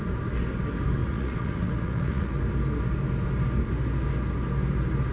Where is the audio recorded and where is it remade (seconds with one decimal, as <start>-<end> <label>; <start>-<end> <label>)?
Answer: 0.0-1.0 recorded; 1.0-2.4 remade; 2.4-5.1 recorded